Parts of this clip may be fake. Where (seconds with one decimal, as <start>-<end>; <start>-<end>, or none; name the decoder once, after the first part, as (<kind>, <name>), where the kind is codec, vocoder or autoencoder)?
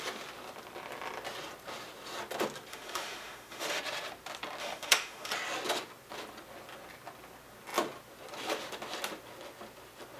2.7-3.8 (autoencoder, DAC-VAE); 4.6-5.3